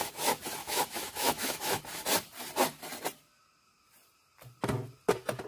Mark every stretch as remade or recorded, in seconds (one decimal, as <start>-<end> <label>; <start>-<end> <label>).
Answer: 0.0-0.6 recorded; 0.6-1.8 remade; 1.8-5.5 recorded